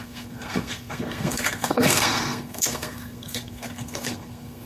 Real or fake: fake